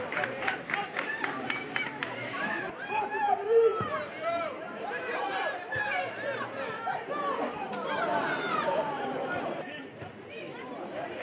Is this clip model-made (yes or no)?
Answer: yes